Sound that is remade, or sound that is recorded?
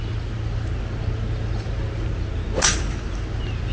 recorded